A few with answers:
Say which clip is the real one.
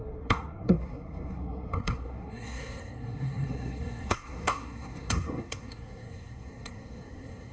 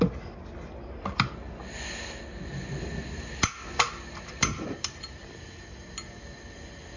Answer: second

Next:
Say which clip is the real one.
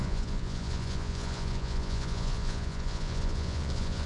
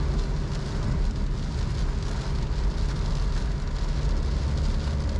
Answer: second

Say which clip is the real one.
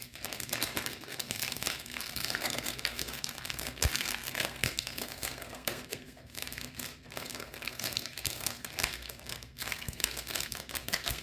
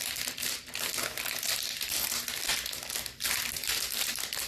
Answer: second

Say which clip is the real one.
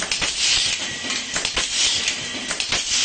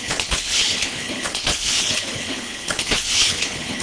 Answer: first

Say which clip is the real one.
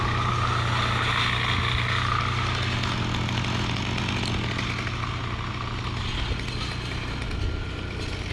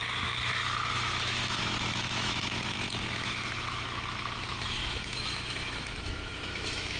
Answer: first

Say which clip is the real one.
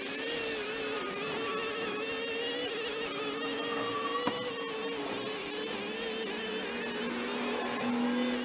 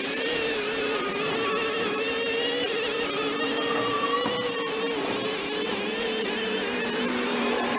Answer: first